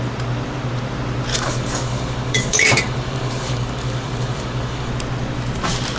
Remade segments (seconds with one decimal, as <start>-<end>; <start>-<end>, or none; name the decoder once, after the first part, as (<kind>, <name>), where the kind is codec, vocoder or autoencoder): 1.3-4.9 (codec, DAC)